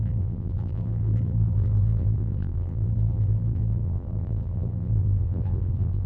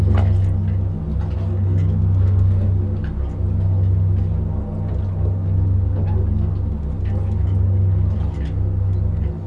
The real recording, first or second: second